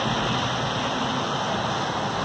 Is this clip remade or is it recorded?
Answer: recorded